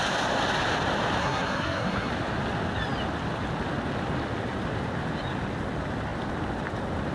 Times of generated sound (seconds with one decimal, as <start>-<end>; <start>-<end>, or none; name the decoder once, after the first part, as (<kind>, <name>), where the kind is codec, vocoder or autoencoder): 1.2-2.1 (codec, SNAC)